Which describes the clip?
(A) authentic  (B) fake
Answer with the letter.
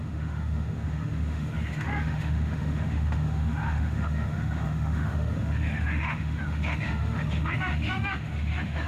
B